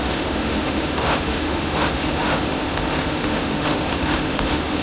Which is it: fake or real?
fake